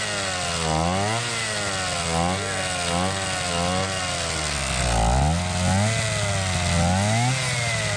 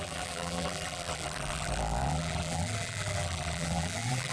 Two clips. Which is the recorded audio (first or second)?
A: first